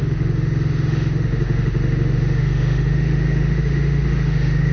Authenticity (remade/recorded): remade